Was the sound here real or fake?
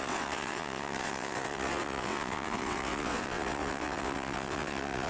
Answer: fake